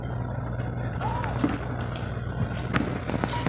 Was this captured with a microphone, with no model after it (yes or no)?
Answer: yes